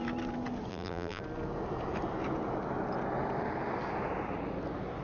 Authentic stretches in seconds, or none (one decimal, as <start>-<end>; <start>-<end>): 0.0-0.7; 1.2-5.0